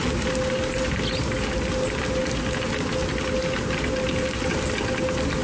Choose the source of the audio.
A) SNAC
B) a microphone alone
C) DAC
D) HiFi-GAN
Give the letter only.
B